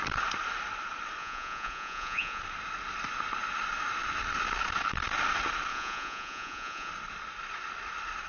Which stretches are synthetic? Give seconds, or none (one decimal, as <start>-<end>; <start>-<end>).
1.2-2.4; 5.7-6.9